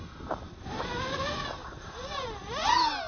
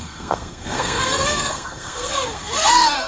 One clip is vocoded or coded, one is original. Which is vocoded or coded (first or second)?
second